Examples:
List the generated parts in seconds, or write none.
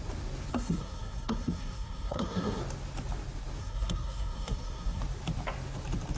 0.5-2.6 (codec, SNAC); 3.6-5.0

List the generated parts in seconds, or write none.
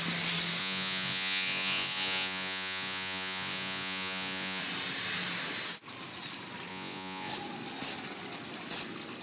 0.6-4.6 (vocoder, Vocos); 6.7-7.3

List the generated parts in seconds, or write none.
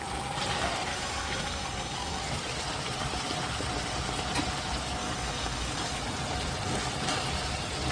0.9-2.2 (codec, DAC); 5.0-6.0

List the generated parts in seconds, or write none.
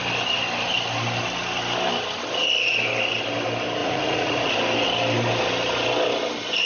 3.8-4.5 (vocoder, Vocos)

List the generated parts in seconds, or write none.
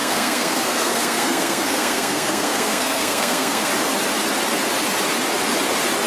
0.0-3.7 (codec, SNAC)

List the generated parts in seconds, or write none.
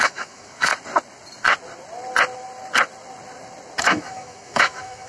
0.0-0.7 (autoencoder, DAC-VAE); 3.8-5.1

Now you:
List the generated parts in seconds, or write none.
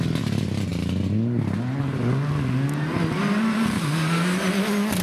none